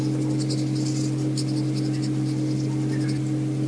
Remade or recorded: recorded